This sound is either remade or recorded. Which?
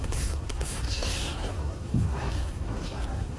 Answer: remade